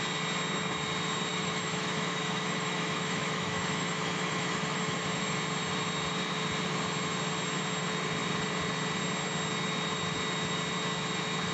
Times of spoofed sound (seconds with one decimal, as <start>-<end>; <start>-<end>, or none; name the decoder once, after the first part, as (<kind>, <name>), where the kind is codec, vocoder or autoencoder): 1.3-5.0 (autoencoder, DAC-VAE)